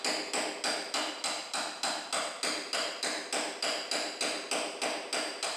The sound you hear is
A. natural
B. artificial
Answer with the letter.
A